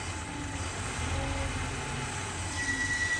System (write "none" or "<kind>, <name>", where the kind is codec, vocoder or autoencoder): none